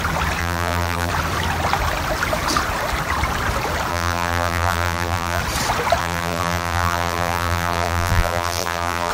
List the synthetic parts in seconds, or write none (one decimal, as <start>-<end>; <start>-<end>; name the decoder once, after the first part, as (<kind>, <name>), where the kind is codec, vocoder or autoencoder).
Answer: 0.4-1.1 (vocoder, BigVGAN v2); 3.9-5.4; 6.0-9.1